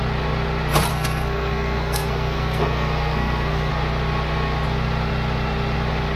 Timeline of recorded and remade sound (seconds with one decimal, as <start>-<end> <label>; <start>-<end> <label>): 0.0-0.9 recorded; 0.9-3.7 remade; 3.7-6.2 recorded